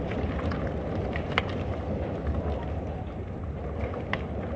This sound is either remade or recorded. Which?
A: recorded